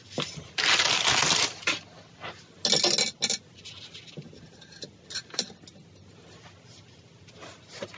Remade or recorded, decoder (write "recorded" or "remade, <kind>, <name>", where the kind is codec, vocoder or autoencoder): recorded